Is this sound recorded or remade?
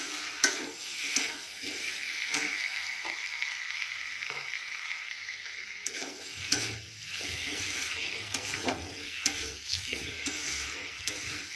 remade